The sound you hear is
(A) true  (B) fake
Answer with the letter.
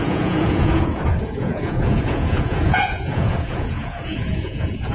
B